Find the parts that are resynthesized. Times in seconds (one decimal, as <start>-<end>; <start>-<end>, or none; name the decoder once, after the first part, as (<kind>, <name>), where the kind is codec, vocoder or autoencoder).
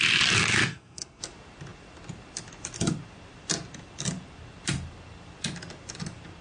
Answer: 0.6-1.2 (codec, SNAC)